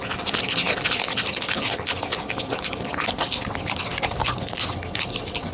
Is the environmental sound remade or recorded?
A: recorded